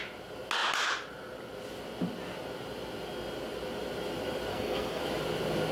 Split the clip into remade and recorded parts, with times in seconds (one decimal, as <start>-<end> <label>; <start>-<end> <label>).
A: 0.0-4.5 recorded; 4.5-5.0 remade; 5.0-5.7 recorded